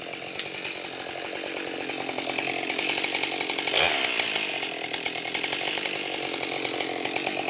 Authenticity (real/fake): real